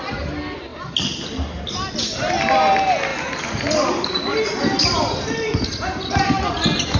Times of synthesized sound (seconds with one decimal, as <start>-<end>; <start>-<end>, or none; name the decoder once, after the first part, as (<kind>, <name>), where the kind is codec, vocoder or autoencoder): none